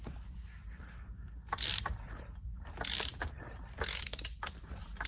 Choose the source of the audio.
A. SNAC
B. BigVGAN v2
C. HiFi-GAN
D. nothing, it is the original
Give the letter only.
B